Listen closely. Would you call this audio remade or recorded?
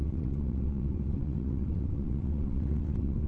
remade